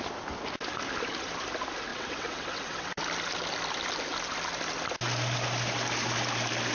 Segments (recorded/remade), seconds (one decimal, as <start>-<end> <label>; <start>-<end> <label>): 0.0-1.9 recorded; 1.9-2.9 remade; 2.9-6.7 recorded